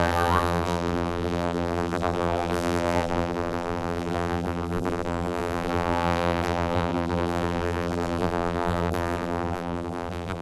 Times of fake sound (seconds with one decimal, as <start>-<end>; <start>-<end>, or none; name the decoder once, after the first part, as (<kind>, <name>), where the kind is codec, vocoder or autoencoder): 0.0-10.4 (vocoder, BigVGAN v2)